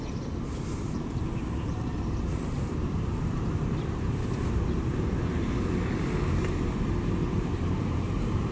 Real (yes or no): no